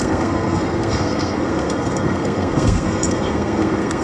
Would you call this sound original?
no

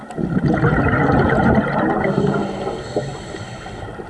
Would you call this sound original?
yes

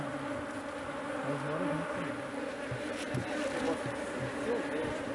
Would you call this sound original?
yes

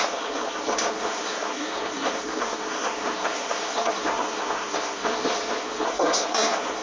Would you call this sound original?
no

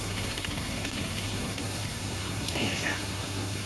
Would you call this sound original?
no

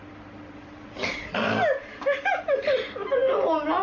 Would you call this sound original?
yes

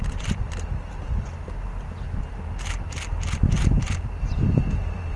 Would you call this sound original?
yes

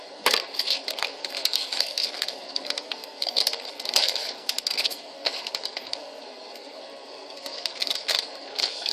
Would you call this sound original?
no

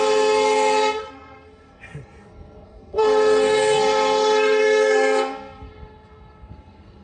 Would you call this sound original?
no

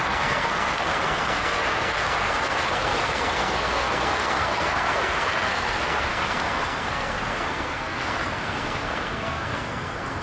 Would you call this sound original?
no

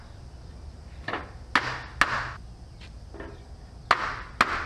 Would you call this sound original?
yes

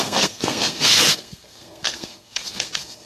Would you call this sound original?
no